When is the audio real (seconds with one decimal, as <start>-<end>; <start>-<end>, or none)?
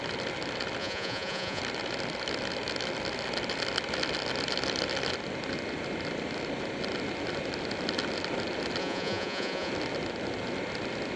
0.0-0.8; 1.6-8.8; 9.7-11.2